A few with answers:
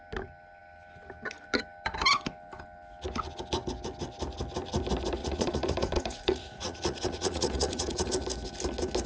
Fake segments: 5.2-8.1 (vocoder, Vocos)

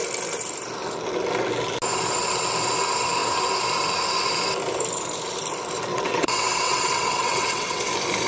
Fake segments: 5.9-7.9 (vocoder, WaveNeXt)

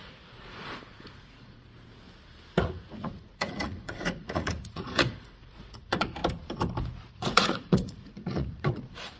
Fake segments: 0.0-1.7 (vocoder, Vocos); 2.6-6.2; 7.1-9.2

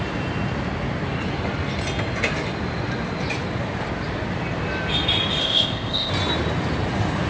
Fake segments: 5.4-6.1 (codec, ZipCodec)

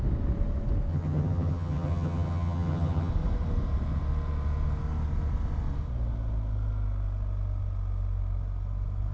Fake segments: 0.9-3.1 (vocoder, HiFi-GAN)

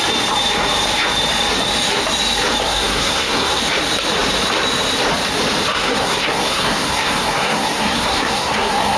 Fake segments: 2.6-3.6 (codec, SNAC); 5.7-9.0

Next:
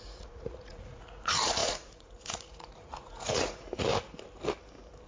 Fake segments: 0.0-3.9 (vocoder, Vocos)